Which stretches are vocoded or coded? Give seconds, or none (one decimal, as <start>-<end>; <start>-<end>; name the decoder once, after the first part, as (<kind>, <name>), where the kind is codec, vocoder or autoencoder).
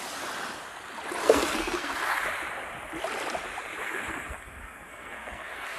1.2-2.2 (codec, SNAC); 3.8-5.8